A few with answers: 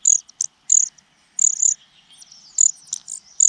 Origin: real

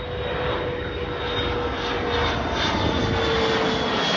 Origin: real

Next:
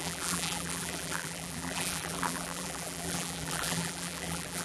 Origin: fake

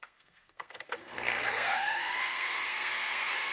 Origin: fake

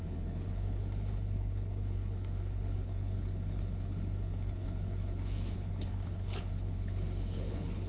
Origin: fake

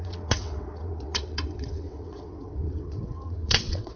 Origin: fake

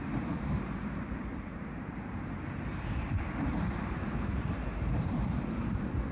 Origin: fake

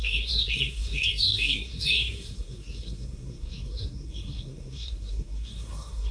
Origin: fake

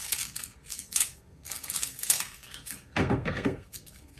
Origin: fake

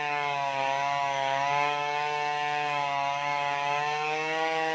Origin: fake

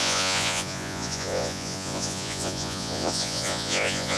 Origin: fake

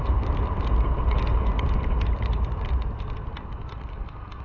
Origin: real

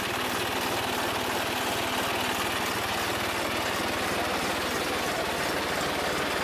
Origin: fake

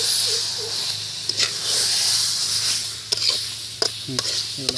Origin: real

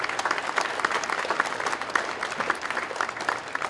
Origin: real